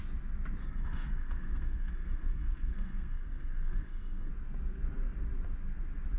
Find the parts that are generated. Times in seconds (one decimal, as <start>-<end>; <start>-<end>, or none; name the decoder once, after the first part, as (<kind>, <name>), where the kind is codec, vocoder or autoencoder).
0.6-4.3 (codec, SNAC)

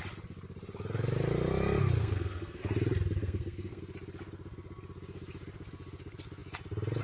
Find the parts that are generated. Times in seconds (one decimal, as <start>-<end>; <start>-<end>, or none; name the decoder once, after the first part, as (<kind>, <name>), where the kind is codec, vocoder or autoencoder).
2.0-2.6 (codec, SNAC); 3.2-3.8

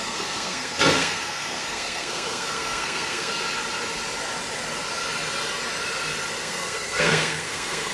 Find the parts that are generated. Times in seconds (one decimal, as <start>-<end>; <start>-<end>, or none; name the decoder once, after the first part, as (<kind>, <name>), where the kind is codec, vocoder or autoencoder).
0.0-3.4 (codec, SNAC); 6.4-7.9

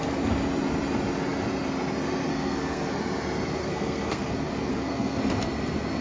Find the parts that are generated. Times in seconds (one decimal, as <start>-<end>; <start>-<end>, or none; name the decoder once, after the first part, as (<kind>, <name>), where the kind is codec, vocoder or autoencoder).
2.3-2.9 (codec, SNAC); 3.6-4.3; 4.7-5.2

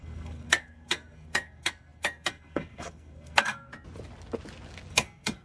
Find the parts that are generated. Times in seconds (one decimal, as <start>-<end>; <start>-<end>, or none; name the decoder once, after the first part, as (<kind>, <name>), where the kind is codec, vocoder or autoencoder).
0.0-3.7 (codec, SNAC); 4.9-5.4

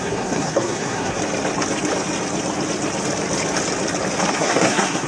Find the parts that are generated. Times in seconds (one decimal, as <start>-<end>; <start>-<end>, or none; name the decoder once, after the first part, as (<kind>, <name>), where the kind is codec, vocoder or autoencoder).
0.0-1.2 (codec, SNAC); 4.3-5.1

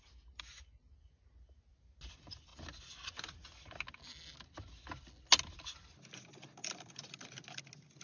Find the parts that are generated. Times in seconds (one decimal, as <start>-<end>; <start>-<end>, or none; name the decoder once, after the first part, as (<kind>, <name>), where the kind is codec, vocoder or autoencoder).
none